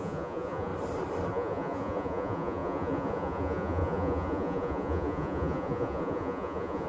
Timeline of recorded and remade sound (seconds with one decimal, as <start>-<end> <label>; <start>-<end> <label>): 0.0-0.7 remade; 0.7-1.3 recorded; 1.3-6.9 remade